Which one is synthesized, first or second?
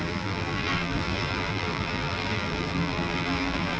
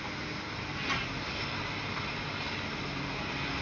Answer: first